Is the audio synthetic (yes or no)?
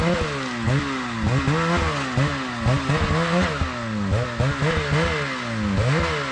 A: no